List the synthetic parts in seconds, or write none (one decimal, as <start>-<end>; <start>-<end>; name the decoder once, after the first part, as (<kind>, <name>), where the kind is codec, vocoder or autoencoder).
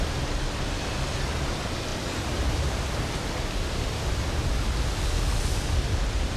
none